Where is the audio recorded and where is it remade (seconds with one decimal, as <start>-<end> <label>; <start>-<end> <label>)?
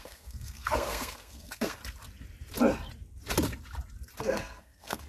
0.0-1.8 remade; 1.8-4.2 recorded; 4.2-5.1 remade